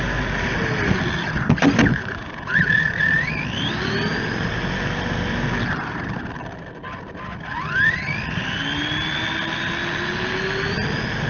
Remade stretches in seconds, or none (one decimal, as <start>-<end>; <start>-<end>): 1.9-3.3